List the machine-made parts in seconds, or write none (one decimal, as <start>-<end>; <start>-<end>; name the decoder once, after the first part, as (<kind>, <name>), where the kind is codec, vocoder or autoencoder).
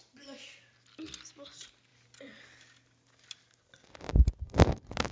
none